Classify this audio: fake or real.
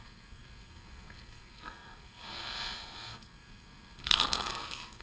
fake